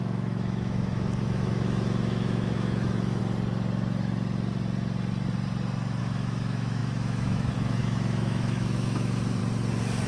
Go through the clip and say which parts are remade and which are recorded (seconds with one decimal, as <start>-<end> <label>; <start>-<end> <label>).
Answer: 0.0-3.2 remade; 3.2-6.0 recorded; 6.0-9.4 remade; 9.4-10.1 recorded